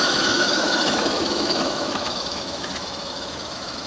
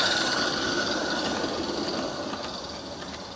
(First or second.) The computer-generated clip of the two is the first